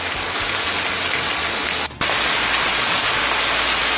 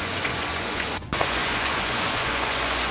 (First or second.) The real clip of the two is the first